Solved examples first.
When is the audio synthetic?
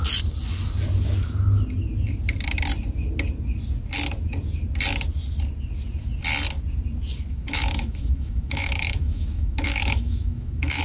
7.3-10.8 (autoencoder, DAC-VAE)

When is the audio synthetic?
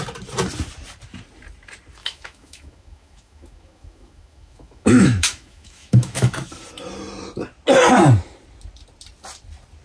2.0-6.5 (autoencoder, DAC-VAE)